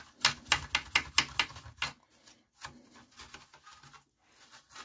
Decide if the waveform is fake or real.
real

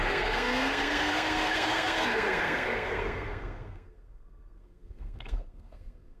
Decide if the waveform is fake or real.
fake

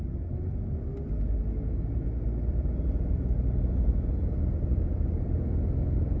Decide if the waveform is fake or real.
real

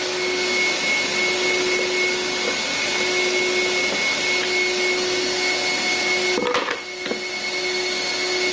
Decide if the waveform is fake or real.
real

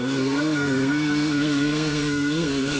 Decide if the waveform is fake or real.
fake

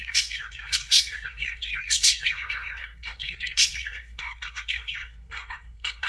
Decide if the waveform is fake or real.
fake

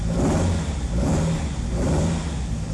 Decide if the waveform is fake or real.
real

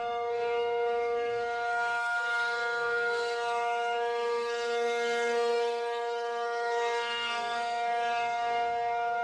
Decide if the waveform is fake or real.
fake